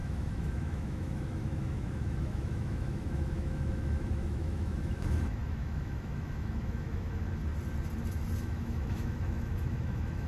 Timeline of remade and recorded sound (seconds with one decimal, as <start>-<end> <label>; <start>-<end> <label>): 0.0-7.4 remade; 7.4-8.4 recorded; 8.4-10.3 remade